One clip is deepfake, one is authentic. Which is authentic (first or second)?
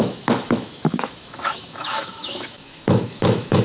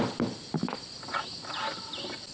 second